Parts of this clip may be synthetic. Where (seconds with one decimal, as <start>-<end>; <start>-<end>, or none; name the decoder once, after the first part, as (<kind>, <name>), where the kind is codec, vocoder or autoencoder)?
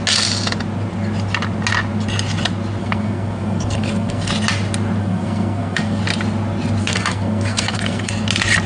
2.8-4.3 (codec, SNAC); 5.0-6.0; 6.8-8.1